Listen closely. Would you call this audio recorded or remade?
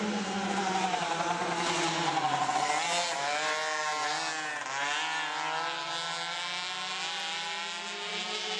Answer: recorded